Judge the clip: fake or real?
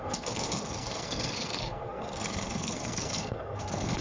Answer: fake